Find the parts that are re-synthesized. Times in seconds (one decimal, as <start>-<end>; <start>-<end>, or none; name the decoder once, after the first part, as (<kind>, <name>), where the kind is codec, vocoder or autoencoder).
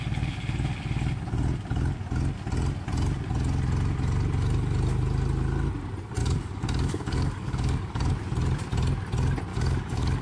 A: 6.2-8.1 (codec, DAC); 9.5-10.2